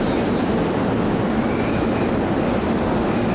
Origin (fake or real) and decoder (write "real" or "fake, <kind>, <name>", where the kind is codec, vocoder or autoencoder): real